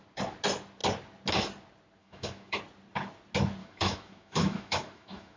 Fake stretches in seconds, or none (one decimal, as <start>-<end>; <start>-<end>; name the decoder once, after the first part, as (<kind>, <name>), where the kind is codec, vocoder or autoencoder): 2.0-2.6 (autoencoder, DAC-VAE); 3.6-5.4